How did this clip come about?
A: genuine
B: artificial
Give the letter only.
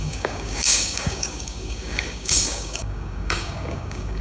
B